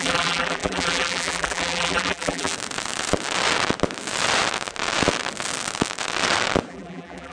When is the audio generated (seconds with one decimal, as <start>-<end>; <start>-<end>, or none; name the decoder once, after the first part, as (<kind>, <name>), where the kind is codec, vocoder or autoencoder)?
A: 0.0-2.5 (vocoder, BigVGAN v2); 6.7-7.3